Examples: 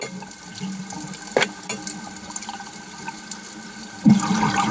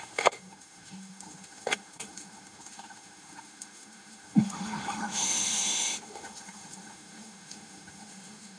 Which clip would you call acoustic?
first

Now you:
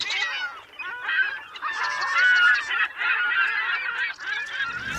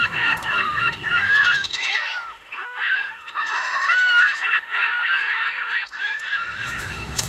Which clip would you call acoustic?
first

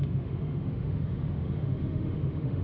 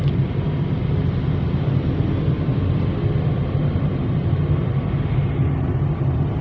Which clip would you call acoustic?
second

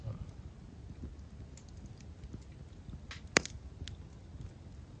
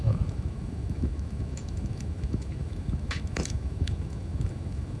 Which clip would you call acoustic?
first